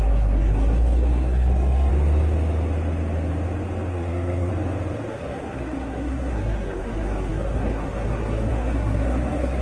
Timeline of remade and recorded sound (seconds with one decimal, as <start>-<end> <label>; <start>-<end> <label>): 0.0-1.9 remade; 1.9-3.9 recorded; 3.9-4.5 remade; 4.5-5.1 recorded; 5.1-9.6 remade